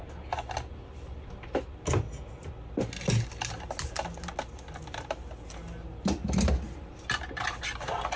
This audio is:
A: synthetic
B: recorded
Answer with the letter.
B